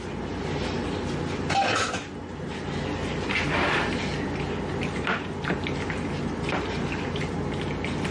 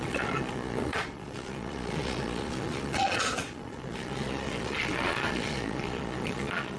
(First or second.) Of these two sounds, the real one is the first